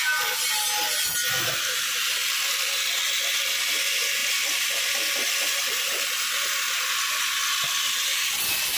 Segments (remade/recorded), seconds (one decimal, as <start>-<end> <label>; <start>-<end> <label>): 0.0-8.8 recorded